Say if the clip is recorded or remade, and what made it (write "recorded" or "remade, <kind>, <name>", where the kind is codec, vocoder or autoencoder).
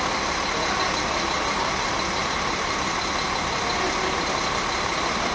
recorded